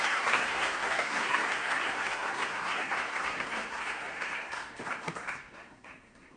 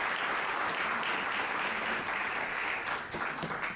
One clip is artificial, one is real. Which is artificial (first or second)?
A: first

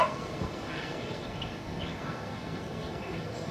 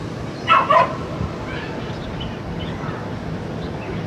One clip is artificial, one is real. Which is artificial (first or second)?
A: first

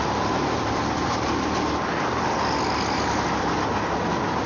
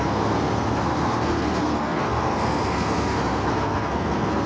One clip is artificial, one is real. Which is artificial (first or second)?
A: second